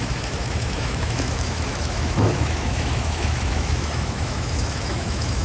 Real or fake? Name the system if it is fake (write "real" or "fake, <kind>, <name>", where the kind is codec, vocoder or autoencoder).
fake, autoencoder, DAC-VAE